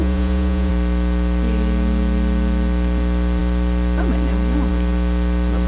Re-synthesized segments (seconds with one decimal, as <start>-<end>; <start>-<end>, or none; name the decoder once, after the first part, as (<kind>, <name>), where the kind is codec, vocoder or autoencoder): 0.0-0.7 (vocoder, Vocos)

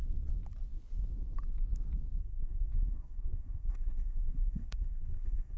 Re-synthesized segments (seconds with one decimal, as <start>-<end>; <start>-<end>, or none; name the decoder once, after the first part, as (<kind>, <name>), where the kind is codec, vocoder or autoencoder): 2.2-5.6 (codec, SNAC)

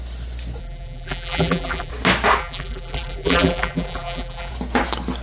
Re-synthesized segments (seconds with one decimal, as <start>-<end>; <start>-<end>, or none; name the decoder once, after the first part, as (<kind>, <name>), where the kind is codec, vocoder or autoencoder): 0.6-1.9 (vocoder, BigVGAN v2); 2.4-4.5

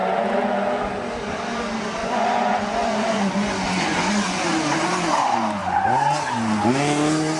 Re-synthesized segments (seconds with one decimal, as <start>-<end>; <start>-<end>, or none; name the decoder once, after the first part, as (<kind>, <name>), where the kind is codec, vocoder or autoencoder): 2.0-4.4 (vocoder, Vocos)

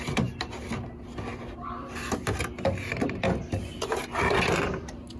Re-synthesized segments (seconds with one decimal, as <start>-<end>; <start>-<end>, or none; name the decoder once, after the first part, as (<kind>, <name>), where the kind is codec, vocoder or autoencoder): none

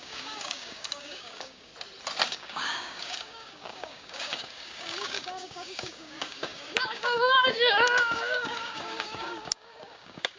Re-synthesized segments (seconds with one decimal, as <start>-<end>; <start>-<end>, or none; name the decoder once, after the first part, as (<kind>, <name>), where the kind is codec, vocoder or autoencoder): 0.0-1.7 (codec, DAC); 2.3-10.4

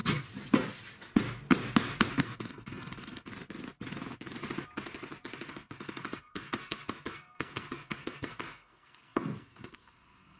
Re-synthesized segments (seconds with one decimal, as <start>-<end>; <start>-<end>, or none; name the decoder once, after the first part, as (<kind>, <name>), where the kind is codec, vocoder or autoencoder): 2.1-3.3 (codec, SNAC); 5.5-10.4

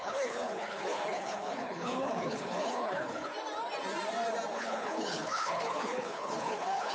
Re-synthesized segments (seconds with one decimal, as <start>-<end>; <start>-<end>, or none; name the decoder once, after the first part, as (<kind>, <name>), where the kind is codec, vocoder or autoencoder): 0.0-3.3 (codec, HILCodec); 4.5-6.9